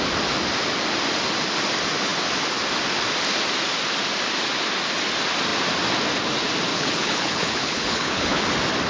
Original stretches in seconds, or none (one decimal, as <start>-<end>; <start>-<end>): 0.0-6.7; 8.4-8.9